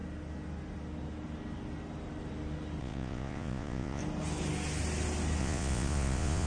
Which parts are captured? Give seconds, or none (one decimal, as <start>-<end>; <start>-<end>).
0.0-2.8; 4.0-5.4